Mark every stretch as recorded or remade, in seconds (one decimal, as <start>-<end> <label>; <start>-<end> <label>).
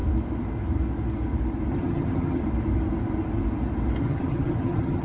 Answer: 0.0-1.7 recorded; 1.7-2.4 remade; 2.4-4.0 recorded; 4.0-5.0 remade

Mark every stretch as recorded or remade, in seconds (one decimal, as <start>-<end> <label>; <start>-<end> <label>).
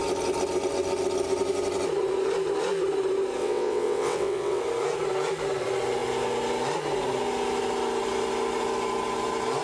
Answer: 0.0-3.4 recorded; 3.4-4.6 remade; 4.6-9.6 recorded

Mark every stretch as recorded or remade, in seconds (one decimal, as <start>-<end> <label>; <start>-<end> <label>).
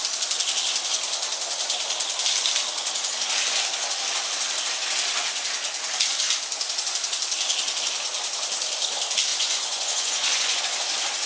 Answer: 0.0-9.3 recorded; 9.3-10.6 remade; 10.6-11.3 recorded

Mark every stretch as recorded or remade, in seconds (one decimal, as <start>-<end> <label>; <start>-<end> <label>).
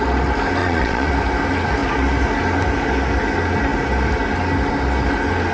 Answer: 0.0-0.6 recorded; 0.6-1.1 remade; 1.1-5.5 recorded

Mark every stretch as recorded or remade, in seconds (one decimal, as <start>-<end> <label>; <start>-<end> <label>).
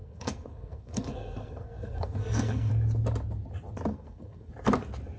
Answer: 0.0-2.7 remade; 2.7-3.9 recorded; 3.9-4.5 remade; 4.5-5.2 recorded